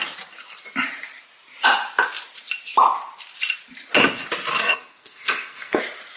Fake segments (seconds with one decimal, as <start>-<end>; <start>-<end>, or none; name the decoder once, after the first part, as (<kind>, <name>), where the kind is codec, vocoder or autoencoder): 4.5-5.8 (codec, SNAC)